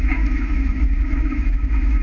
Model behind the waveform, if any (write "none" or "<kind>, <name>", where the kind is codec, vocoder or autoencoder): autoencoder, DAC-VAE